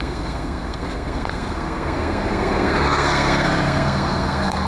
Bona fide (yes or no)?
no